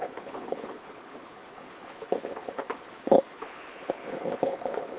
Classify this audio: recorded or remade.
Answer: remade